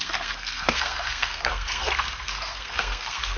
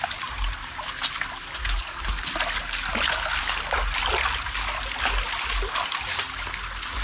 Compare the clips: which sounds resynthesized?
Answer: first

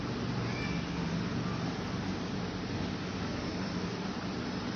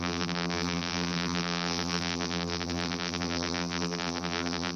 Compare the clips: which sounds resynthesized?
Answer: second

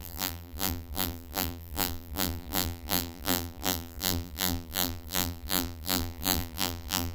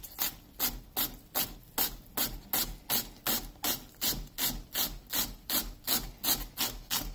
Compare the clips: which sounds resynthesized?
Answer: first